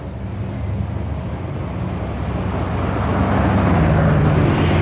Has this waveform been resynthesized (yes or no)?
no